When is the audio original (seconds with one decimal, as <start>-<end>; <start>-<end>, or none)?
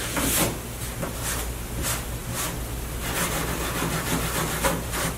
0.0-5.2